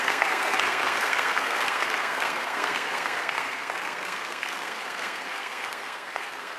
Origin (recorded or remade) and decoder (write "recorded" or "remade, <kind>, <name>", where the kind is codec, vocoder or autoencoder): remade, codec, SNAC